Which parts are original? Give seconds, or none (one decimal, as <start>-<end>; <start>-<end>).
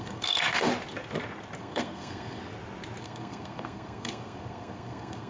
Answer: 0.7-1.6; 2.4-3.0